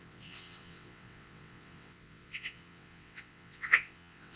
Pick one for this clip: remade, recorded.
remade